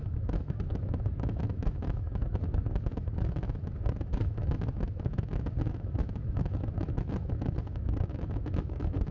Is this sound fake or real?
fake